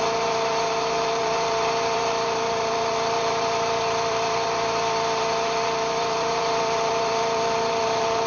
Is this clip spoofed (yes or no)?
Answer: yes